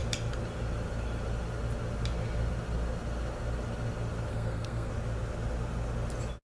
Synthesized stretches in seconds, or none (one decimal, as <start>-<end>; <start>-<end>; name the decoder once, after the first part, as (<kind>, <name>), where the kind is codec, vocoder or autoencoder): 4.3-4.9 (codec, SNAC)